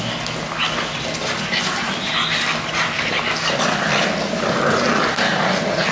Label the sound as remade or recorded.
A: recorded